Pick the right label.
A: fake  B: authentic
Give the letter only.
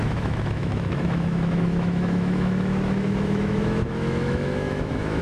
A